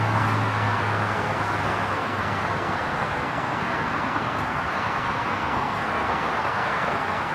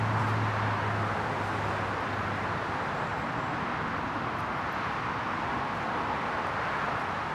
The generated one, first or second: first